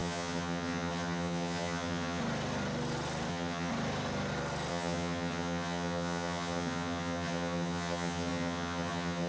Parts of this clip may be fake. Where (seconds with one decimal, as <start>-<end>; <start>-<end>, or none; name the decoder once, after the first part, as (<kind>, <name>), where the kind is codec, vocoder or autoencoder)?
0.0-2.2 (vocoder, HiFi-GAN); 3.3-3.7; 4.7-9.3